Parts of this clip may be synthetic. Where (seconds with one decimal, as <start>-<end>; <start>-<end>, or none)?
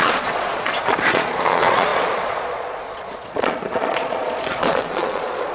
0.0-5.5